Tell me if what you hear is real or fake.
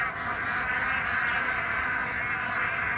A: real